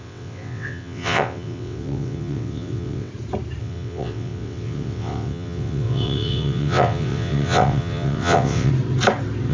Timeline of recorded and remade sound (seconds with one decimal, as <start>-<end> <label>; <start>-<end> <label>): 0.0-3.1 remade; 3.1-3.6 recorded; 3.6-8.7 remade; 8.7-9.5 recorded